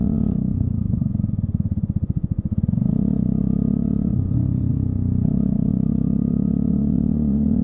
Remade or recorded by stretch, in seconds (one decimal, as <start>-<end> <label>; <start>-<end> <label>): 0.0-7.6 remade